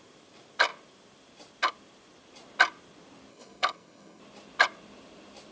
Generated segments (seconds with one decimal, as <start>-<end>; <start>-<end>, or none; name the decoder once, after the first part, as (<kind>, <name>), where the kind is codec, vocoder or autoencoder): 3.3-4.2 (codec, SNAC)